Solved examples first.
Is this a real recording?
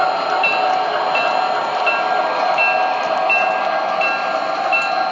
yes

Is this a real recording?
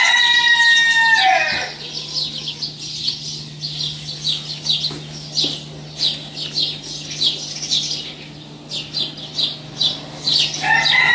yes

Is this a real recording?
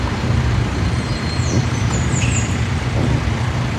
no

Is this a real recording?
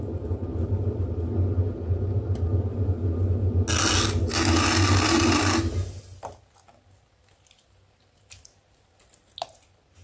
yes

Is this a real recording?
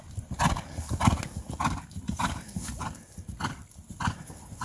yes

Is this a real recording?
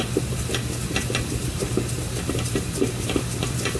yes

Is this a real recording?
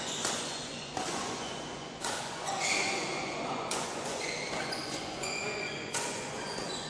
no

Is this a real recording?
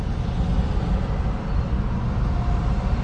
yes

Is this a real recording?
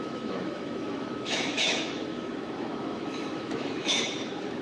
no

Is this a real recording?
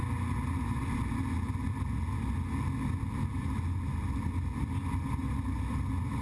yes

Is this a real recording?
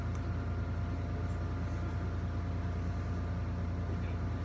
yes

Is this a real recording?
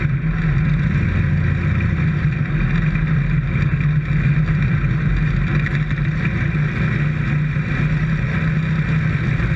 yes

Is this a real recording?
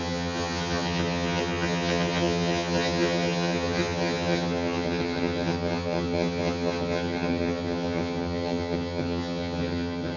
no